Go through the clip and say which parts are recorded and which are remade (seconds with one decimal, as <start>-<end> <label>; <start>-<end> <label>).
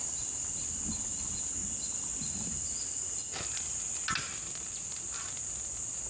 0.0-6.1 recorded